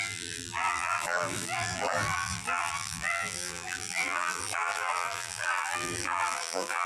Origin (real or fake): fake